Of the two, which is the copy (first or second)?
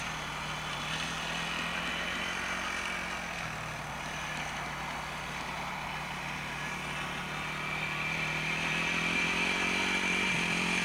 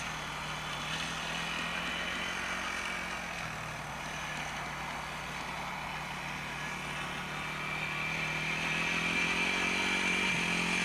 first